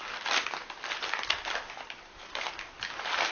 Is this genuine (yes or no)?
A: yes